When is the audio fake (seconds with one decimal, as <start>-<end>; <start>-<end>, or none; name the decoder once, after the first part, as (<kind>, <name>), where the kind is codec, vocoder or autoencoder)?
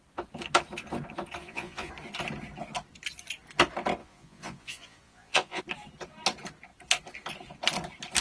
1.4-1.9 (vocoder, Vocos); 4.0-5.6